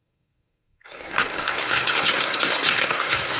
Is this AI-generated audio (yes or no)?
yes